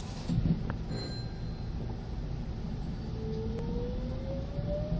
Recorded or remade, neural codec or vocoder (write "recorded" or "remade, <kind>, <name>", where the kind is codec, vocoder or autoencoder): recorded